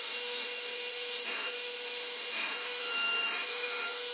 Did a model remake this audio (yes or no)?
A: yes